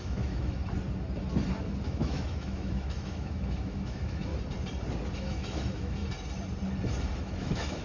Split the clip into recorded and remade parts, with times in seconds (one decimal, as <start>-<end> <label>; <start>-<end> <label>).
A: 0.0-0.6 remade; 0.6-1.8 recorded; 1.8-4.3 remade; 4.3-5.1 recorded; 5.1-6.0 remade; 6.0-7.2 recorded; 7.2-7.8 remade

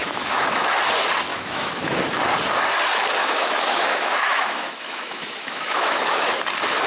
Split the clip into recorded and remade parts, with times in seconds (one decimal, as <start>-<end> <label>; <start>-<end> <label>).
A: 0.0-0.7 remade; 0.7-1.3 recorded; 1.3-2.0 remade; 2.0-3.2 recorded; 3.2-6.3 remade; 6.3-6.9 recorded

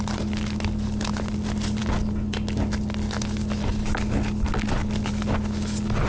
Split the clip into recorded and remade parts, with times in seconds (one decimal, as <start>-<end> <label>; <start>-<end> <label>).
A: 0.0-6.1 recorded

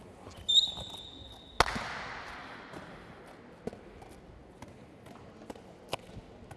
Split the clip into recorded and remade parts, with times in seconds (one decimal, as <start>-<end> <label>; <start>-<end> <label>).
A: 0.0-2.4 recorded; 2.4-3.2 remade; 3.2-6.6 recorded

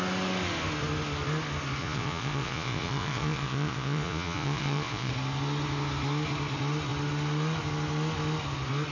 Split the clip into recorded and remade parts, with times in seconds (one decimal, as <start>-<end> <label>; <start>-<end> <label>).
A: 0.0-1.8 recorded; 1.8-5.1 remade; 5.1-8.9 recorded

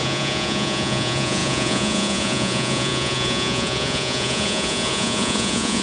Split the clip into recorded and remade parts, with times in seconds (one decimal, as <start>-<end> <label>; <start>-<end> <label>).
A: 0.0-5.8 remade

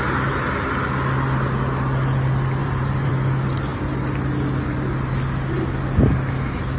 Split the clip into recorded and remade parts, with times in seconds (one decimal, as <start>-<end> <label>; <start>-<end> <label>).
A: 0.0-2.6 recorded; 2.6-3.1 remade; 3.1-6.8 recorded

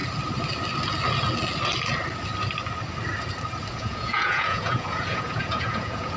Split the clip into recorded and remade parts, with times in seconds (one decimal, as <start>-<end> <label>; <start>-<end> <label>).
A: 0.0-3.7 recorded; 3.7-6.2 remade